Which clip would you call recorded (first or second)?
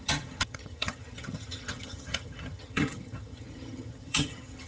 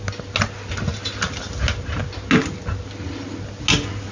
second